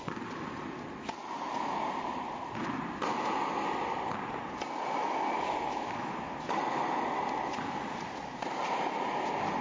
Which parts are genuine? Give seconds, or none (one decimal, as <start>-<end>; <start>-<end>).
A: 0.0-5.0; 6.3-9.6